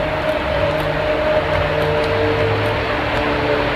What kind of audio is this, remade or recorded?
recorded